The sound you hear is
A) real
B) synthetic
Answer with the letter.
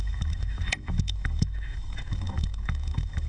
B